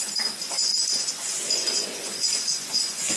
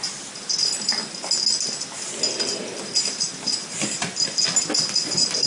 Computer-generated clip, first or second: first